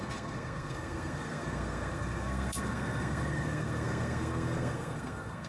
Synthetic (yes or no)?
yes